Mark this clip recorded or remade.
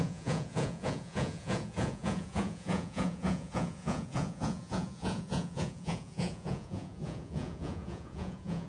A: remade